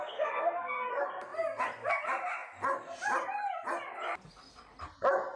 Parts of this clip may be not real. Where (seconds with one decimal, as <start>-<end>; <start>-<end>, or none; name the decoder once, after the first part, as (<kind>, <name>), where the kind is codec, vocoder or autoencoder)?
0.0-0.9 (codec, SNAC)